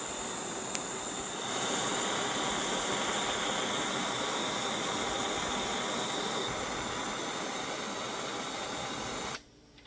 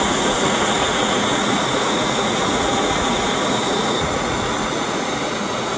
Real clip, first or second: first